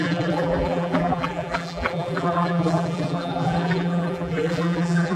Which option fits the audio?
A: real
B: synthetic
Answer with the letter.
B